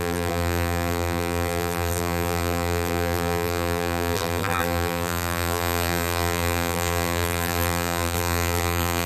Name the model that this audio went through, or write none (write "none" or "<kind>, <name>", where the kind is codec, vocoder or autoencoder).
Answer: vocoder, BigVGAN v2